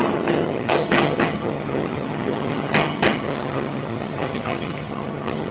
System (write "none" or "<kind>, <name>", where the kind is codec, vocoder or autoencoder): vocoder, HiFi-GAN